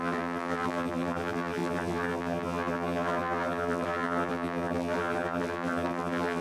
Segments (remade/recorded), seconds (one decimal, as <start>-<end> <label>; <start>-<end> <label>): 0.0-6.4 remade